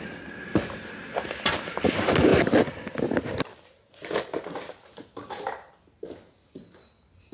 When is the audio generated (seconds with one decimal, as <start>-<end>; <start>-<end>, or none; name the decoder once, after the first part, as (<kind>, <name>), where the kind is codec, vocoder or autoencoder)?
2.3-4.9 (vocoder, BigVGAN v2)